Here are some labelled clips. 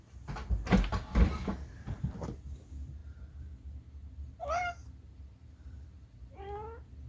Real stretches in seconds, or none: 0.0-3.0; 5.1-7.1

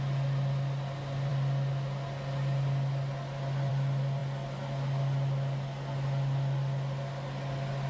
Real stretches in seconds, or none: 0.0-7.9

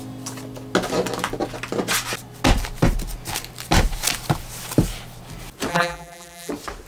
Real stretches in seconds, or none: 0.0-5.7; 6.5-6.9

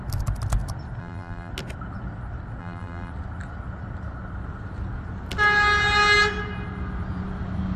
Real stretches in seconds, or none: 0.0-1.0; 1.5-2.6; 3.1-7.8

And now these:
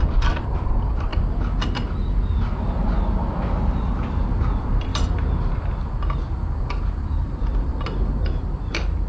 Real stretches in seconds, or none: 1.1-2.6

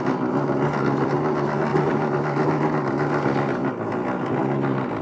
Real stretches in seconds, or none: 0.0-5.0

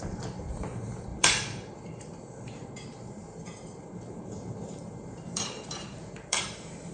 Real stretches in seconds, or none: none